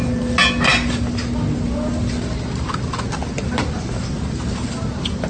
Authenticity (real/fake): real